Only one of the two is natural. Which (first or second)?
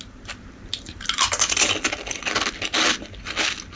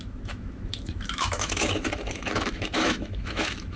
first